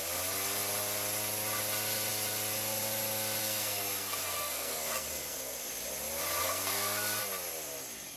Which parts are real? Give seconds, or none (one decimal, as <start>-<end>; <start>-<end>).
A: 0.0-3.4; 5.7-6.4; 7.2-8.2